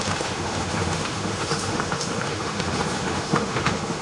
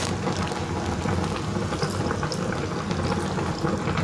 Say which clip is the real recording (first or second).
second